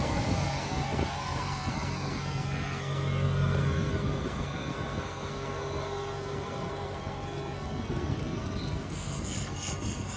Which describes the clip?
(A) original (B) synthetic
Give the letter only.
B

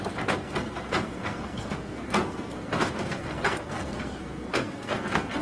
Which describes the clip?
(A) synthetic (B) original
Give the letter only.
A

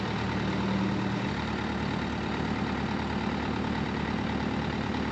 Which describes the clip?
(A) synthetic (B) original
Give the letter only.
B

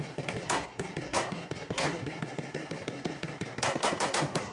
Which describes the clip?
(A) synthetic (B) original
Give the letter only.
A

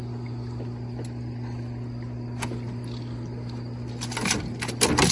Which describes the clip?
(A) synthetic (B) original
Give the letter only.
B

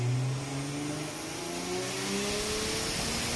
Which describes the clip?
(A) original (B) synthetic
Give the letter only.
A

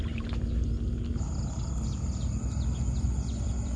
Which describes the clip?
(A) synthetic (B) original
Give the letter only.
B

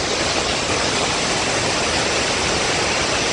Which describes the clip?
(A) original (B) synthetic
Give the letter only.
A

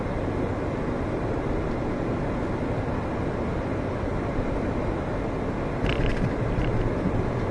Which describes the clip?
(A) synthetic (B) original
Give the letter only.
B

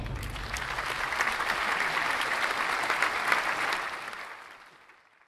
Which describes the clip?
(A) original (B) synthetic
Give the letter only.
A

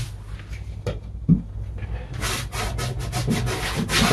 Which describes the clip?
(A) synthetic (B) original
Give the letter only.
B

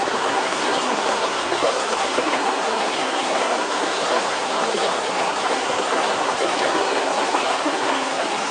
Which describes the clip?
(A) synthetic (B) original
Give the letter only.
A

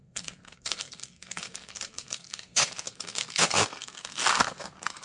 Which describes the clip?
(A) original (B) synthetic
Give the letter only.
B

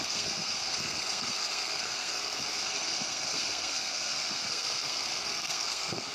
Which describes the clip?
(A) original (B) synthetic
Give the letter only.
B